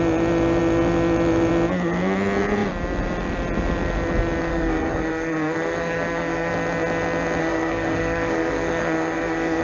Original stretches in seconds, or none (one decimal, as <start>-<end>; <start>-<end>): 0.0-4.5; 6.5-7.4